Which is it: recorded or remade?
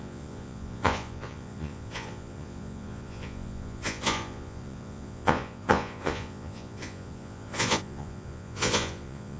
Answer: remade